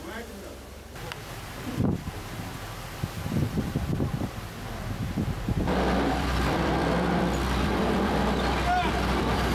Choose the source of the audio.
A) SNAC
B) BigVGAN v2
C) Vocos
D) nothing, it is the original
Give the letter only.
B